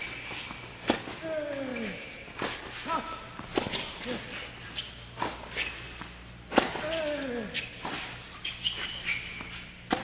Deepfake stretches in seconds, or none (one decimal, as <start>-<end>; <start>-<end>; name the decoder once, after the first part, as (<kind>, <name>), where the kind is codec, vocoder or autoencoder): none

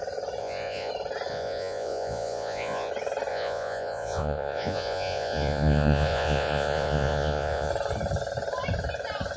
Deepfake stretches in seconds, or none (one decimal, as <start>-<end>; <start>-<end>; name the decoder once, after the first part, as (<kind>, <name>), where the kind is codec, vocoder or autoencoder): 0.4-0.9 (vocoder, Vocos); 1.3-2.9; 3.3-7.7